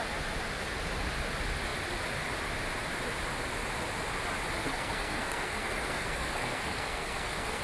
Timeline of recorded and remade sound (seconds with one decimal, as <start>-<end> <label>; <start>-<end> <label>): 0.0-4.6 recorded; 4.6-7.6 remade